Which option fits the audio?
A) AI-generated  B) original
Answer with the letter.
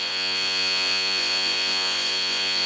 A